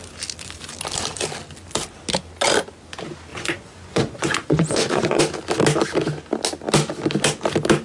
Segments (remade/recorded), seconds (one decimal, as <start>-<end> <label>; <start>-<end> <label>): 0.0-3.3 recorded; 3.3-5.2 remade; 5.2-7.8 recorded